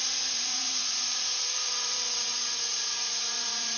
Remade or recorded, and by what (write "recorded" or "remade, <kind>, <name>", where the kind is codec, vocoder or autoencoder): remade, vocoder, Vocos